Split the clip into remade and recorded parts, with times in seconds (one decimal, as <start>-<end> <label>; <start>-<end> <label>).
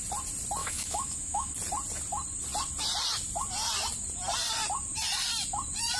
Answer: 0.0-0.6 recorded; 0.6-1.5 remade; 1.5-6.0 recorded